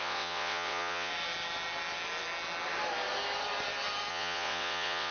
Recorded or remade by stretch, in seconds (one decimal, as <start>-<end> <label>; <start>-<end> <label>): 0.0-1.1 remade; 1.1-4.1 recorded; 4.1-5.1 remade